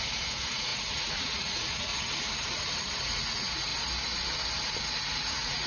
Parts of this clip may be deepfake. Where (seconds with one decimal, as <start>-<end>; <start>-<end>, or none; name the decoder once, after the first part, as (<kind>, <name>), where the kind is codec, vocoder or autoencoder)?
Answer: 0.0-1.9 (vocoder, Vocos); 3.0-3.7; 5.3-5.7